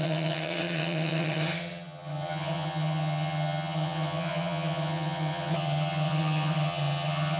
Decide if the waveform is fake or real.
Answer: fake